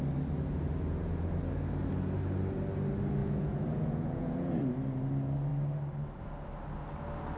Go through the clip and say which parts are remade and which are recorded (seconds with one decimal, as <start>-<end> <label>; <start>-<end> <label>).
0.0-3.2 recorded; 3.2-4.6 remade; 4.6-7.4 recorded